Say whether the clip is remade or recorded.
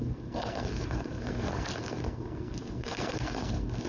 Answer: remade